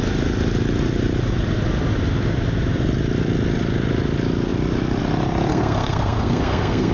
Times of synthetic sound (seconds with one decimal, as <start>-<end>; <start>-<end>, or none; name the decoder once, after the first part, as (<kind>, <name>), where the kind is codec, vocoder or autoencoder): 5.5-6.9 (codec, SNAC)